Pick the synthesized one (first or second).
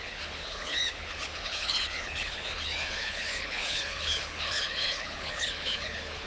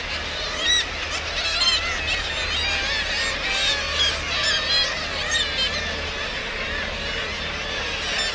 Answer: first